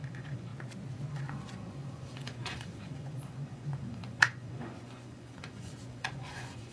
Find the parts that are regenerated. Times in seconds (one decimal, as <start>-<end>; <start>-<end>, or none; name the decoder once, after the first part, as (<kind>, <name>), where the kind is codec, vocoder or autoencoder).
0.0-0.5 (vocoder, Vocos); 1.1-6.7